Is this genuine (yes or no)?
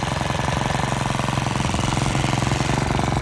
yes